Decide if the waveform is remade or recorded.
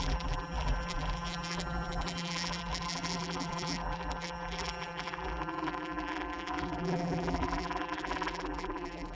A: remade